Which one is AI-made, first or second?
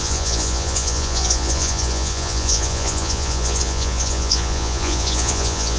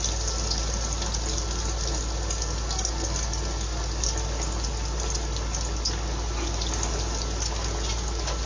first